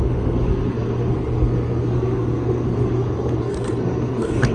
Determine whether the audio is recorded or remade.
remade